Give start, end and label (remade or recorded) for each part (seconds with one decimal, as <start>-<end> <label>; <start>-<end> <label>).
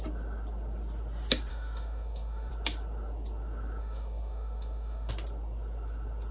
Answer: 0.0-1.5 recorded; 1.5-2.5 remade; 2.5-3.8 recorded; 3.8-5.1 remade; 5.1-6.3 recorded